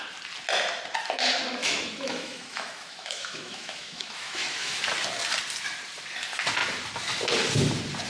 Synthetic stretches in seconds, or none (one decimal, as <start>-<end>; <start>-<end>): 1.6-4.8